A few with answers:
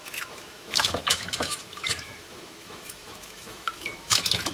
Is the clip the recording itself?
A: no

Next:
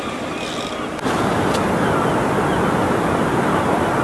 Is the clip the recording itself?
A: yes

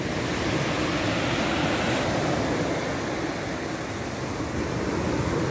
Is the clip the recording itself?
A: yes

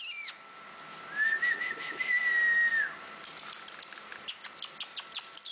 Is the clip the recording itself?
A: yes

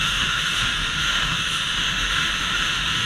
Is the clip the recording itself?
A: no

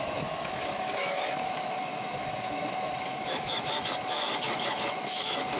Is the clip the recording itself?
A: no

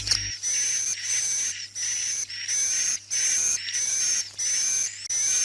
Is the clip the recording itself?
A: yes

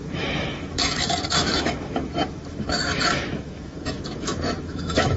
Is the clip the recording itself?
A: no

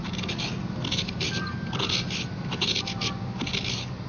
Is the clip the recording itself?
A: yes